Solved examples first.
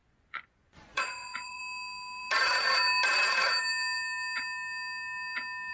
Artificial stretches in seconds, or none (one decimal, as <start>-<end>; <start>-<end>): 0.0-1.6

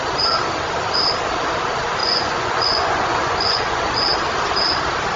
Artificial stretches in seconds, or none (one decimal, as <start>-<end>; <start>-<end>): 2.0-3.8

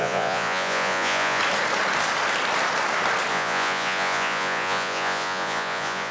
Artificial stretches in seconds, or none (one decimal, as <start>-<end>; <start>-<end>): 0.0-1.4; 3.3-6.1